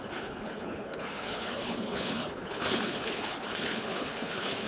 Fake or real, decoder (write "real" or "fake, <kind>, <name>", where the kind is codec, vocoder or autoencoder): fake, codec, HILCodec